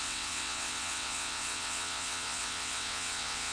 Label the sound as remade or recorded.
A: remade